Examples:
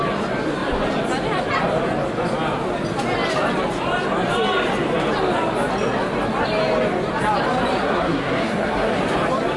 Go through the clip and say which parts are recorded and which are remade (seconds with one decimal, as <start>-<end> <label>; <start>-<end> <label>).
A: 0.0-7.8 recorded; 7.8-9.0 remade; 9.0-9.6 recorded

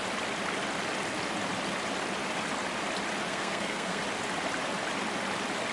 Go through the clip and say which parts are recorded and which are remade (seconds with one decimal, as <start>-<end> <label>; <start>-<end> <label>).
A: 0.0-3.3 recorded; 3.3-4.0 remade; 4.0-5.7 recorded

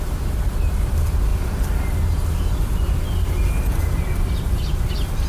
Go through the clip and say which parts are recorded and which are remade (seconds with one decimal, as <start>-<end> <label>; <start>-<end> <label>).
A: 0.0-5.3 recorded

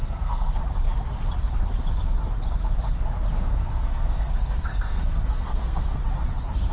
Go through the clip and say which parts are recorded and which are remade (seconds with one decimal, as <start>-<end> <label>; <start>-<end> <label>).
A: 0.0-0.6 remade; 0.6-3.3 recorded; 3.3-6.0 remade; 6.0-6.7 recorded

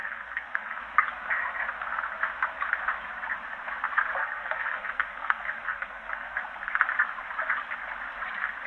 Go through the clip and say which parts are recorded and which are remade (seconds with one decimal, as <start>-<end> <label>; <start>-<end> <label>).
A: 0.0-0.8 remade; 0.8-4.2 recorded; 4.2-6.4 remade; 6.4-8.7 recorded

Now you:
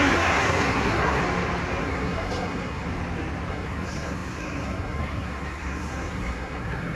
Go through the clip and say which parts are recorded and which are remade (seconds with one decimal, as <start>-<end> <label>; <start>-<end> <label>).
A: 0.0-1.2 remade; 1.2-1.8 recorded; 1.8-2.9 remade; 2.9-3.5 recorded; 3.5-6.9 remade